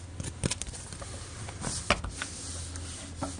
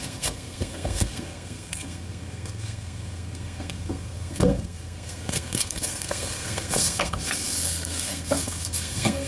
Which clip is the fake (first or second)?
second